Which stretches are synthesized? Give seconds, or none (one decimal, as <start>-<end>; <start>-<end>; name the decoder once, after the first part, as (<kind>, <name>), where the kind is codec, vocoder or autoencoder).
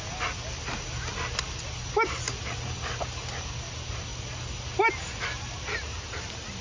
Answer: none